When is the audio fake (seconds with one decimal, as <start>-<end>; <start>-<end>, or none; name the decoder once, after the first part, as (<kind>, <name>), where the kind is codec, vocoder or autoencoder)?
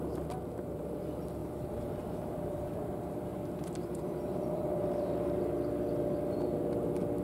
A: 1.4-5.4 (vocoder, BigVGAN v2)